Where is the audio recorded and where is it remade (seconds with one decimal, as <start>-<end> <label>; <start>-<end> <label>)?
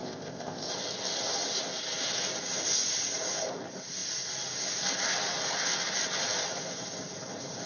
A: 0.0-0.7 remade; 0.7-7.7 recorded